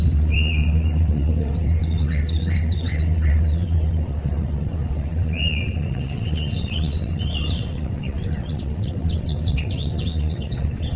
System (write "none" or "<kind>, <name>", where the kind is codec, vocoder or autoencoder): vocoder, WaveNeXt